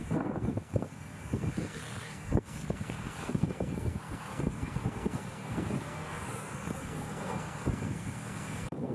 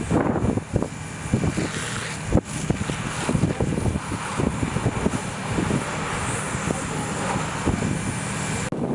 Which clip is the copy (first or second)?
first